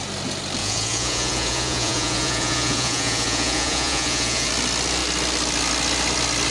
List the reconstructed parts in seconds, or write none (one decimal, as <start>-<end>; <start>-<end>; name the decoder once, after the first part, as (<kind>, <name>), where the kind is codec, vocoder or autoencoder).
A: 0.6-4.5 (vocoder, Vocos)